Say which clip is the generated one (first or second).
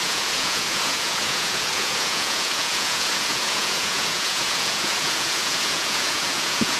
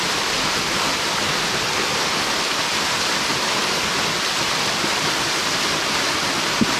first